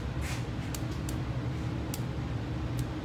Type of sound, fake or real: real